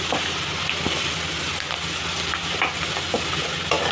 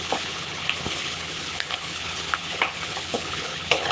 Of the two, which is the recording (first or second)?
first